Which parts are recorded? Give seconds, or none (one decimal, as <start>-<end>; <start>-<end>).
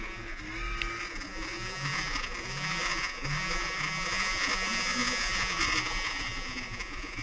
0.4-1.0